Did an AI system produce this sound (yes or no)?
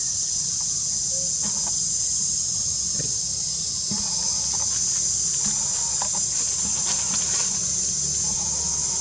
no